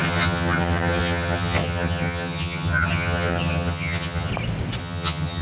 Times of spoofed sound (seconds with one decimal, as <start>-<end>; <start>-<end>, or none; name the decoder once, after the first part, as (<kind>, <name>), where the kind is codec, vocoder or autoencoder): 0.0-4.3 (vocoder, HiFi-GAN); 4.8-5.4